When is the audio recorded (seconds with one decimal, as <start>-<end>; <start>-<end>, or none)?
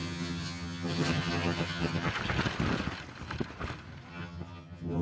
2.1-4.1